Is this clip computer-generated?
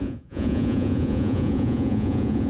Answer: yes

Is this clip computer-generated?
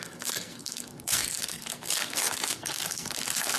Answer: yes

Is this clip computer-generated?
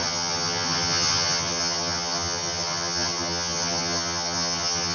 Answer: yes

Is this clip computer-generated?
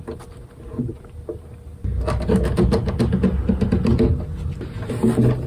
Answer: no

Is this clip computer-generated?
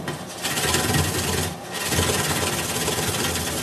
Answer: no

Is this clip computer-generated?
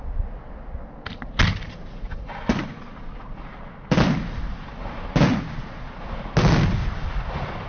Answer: no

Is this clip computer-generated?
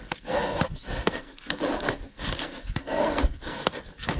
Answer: yes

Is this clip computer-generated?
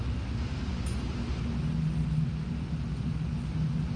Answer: no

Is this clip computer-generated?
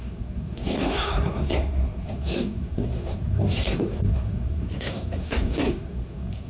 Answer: yes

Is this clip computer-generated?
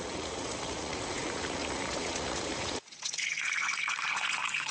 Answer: yes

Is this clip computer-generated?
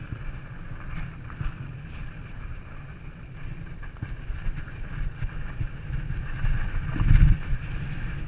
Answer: no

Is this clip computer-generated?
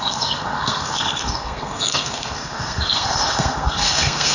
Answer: yes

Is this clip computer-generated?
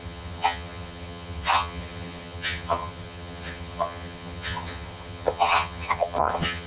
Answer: yes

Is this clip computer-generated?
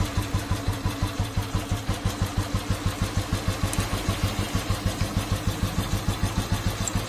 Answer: no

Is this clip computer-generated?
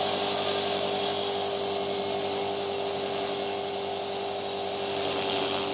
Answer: no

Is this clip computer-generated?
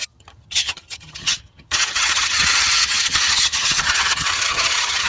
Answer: yes